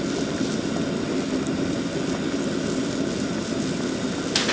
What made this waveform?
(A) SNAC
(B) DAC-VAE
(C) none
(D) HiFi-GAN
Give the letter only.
C